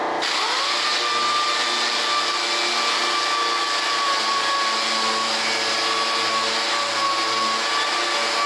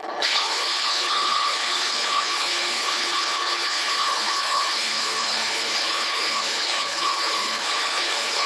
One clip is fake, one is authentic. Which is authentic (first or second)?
first